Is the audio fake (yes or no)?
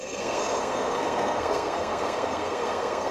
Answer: yes